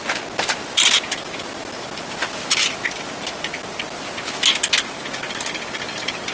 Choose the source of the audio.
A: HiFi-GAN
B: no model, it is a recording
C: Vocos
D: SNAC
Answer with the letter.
B